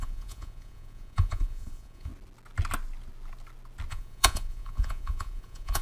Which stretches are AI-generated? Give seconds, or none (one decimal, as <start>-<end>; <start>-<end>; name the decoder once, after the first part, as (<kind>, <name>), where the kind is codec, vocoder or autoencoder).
0.0-2.1 (vocoder, Vocos); 3.9-5.8